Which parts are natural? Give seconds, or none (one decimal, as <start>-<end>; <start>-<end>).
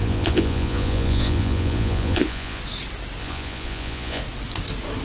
2.6-3.2; 4.2-5.0